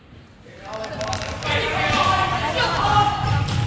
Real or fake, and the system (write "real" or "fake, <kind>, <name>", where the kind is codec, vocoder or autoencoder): real